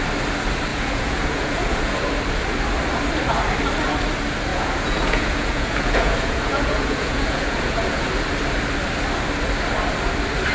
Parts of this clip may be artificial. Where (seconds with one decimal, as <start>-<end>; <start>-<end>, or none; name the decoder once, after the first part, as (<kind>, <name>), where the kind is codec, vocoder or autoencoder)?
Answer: 0.7-2.0 (vocoder, Vocos); 4.5-8.1